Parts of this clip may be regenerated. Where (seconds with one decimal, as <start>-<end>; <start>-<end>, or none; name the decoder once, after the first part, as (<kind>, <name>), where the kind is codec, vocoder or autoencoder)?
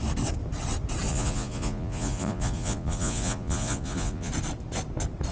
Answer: 1.1-4.3 (vocoder, Vocos)